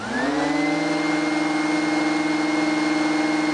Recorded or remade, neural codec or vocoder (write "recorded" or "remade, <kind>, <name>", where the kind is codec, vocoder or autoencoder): recorded